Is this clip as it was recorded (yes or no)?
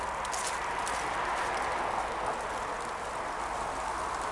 yes